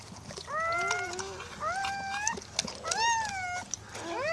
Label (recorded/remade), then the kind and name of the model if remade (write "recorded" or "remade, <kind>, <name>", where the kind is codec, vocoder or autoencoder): recorded